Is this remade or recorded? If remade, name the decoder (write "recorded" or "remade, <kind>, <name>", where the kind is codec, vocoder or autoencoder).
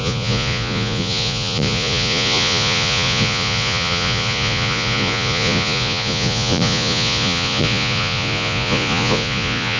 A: remade, vocoder, Vocos